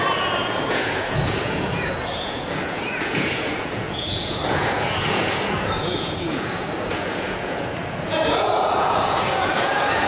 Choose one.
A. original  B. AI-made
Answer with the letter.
B